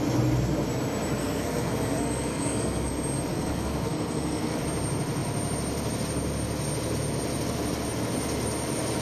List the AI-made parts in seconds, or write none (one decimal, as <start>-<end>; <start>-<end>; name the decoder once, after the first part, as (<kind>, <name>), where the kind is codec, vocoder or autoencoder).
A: 1.2-2.9 (codec, SNAC); 3.3-4.6